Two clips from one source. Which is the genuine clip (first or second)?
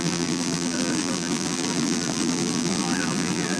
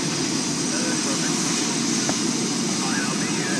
second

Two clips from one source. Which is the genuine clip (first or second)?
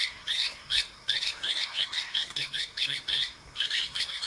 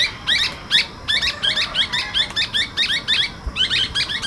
second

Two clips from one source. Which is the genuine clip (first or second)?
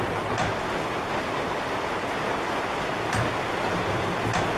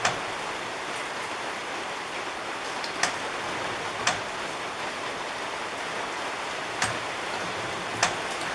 first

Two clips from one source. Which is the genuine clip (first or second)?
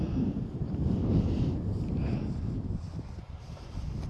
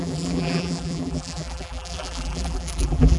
first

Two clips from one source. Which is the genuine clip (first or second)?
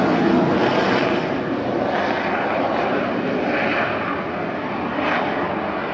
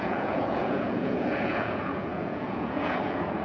first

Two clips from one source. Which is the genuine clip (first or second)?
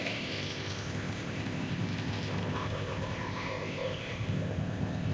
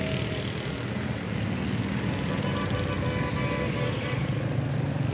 second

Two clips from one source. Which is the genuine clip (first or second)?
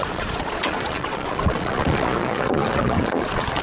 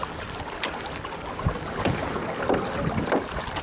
second